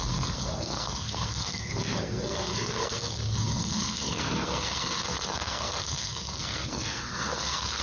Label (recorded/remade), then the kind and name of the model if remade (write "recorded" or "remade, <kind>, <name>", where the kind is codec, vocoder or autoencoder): remade, codec, SNAC